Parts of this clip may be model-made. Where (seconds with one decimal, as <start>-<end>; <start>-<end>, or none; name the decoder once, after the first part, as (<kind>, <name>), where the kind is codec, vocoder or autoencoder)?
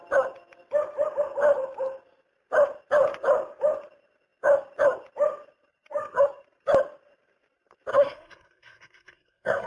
7.9-9.7 (codec, SNAC)